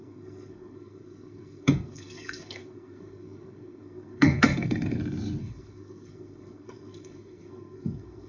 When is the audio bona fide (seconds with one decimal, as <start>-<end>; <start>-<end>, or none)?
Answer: 5.0-5.4